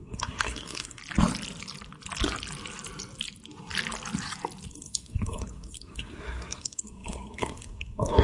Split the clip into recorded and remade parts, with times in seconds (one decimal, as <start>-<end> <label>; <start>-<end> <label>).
0.0-1.0 remade; 1.0-4.7 recorded; 4.7-8.2 remade